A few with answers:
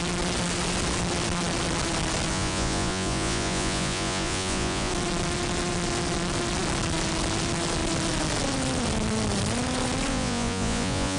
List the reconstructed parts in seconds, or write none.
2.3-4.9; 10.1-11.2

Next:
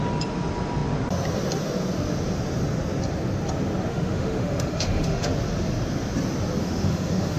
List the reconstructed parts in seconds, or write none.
3.9-5.3; 6.6-7.4

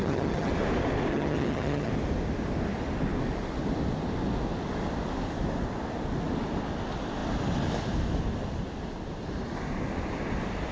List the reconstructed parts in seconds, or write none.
0.0-0.5; 1.1-1.9

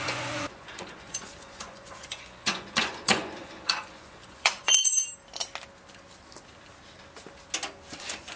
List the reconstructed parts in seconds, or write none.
0.0-5.0; 8.0-8.4

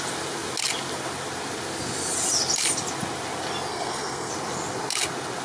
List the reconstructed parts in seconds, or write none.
3.7-4.3

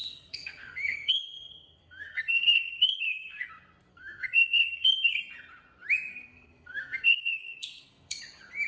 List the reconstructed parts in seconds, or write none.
0.0-3.5; 3.9-5.2; 6.1-8.2

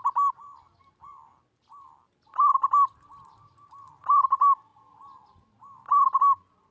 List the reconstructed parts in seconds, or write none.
none

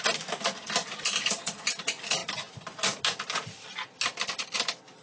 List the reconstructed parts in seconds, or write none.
none